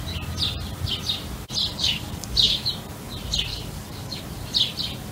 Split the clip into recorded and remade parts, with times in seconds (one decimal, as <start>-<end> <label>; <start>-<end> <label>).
0.0-1.6 recorded; 1.6-2.7 remade; 2.7-3.5 recorded; 3.5-4.2 remade; 4.2-5.1 recorded